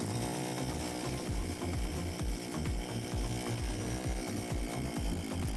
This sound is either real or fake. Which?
real